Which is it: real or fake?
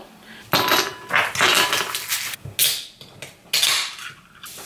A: real